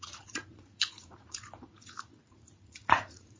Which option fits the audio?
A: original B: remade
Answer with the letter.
B